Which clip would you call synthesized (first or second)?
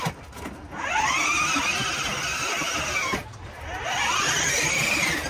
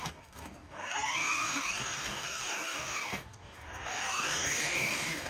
second